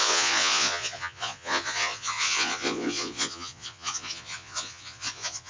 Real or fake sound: fake